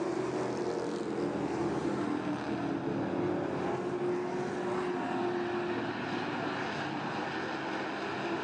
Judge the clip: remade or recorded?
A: recorded